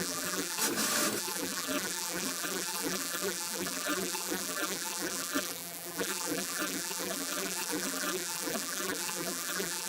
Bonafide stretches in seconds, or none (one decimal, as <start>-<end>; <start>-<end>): 0.6-1.2

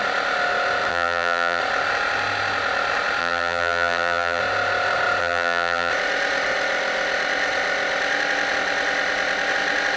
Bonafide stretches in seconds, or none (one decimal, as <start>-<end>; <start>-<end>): 0.0-0.9; 1.6-3.2; 4.4-5.2; 5.9-10.0

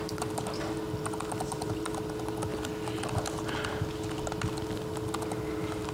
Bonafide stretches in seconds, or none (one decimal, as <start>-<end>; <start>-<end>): 0.8-1.7; 2.5-5.5